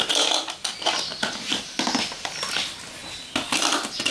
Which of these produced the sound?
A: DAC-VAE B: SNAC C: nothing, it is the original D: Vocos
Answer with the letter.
C